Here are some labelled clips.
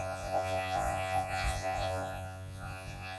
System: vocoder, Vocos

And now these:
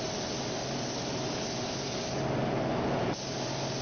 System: none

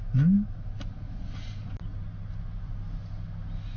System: none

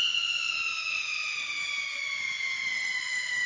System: none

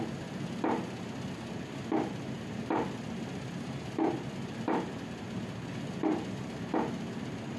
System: none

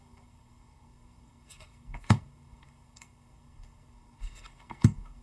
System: codec, SNAC